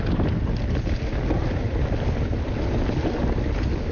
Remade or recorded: recorded